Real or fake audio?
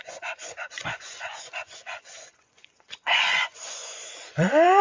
fake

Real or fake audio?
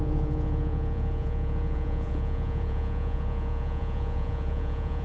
fake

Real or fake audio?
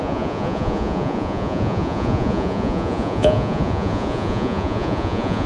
fake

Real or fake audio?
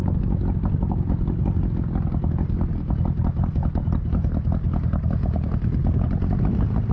real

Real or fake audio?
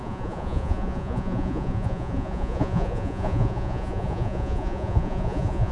fake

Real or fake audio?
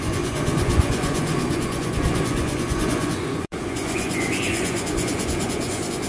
fake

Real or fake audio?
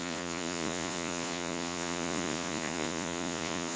fake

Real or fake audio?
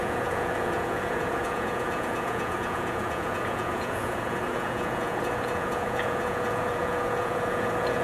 fake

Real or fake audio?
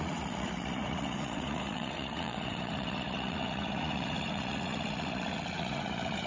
fake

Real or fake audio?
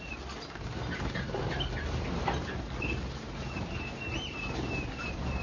real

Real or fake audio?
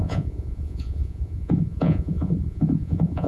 fake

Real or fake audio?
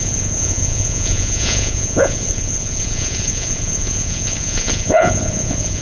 fake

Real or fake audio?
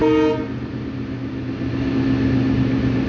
real